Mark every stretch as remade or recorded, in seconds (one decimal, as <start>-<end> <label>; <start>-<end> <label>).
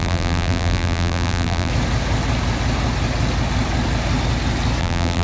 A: 0.0-1.7 remade; 1.7-4.8 recorded; 4.8-5.2 remade